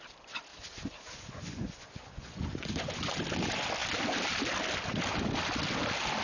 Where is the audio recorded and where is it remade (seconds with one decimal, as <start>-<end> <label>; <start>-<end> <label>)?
0.0-0.5 recorded; 0.5-3.1 remade; 3.1-6.2 recorded